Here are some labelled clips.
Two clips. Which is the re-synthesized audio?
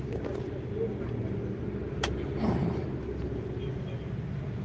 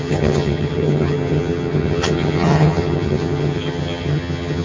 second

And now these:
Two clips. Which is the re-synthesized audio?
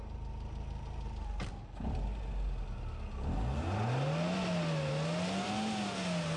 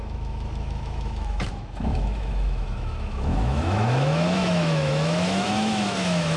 second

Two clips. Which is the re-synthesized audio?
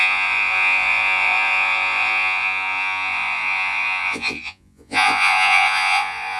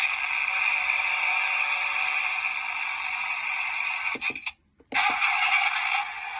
first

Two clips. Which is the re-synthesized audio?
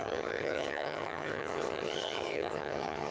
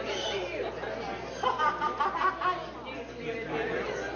first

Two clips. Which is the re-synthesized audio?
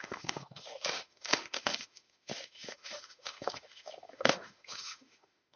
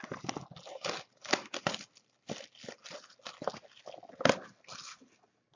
first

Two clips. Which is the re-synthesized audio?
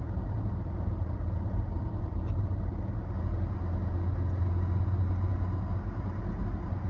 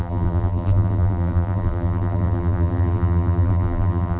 second